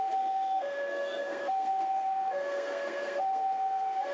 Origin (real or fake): fake